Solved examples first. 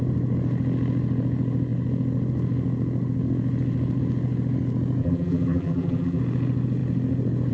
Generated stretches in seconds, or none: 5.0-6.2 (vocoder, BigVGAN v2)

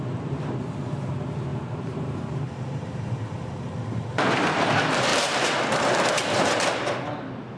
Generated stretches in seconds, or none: 1.5-3.5 (vocoder, BigVGAN v2); 5.1-5.9

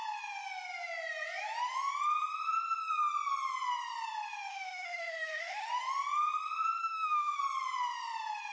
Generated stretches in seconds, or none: 4.5-5.7 (autoencoder, DAC-VAE); 6.8-7.4

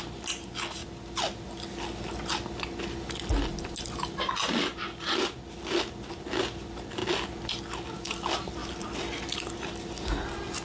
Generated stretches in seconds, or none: none

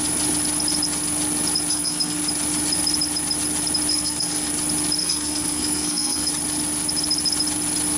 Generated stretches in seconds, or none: 1.7-2.2 (codec, SNAC); 3.9-4.5; 5.0-6.3

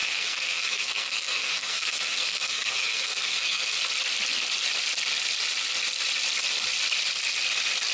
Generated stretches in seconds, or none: 0.0-3.7 (codec, SNAC)

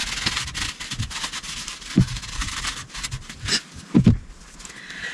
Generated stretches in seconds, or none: none